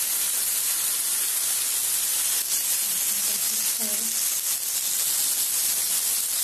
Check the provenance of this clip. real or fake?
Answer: real